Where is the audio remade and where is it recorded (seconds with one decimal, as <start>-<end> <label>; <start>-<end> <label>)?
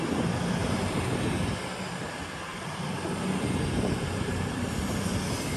0.0-2.5 recorded; 2.5-5.6 remade